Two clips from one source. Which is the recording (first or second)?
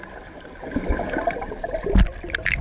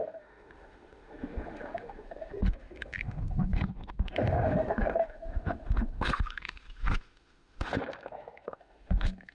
first